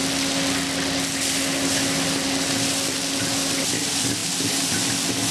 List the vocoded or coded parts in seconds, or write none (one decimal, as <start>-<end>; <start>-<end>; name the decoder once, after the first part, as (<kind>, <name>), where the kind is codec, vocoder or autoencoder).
none